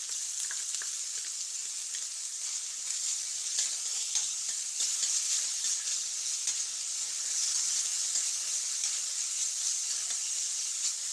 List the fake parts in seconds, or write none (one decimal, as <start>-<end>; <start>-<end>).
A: none